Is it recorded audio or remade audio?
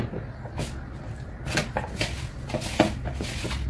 recorded